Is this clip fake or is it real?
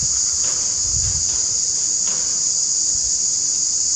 real